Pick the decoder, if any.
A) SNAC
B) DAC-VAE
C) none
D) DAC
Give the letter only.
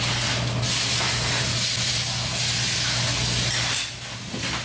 C